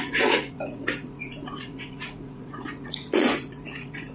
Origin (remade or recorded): remade